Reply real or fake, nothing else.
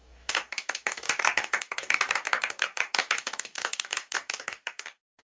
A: fake